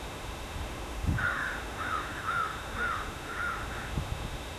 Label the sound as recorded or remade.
remade